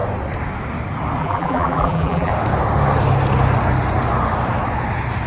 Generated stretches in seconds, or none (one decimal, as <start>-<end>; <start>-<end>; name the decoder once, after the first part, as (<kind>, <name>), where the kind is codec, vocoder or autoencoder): 1.2-2.3 (vocoder, BigVGAN v2)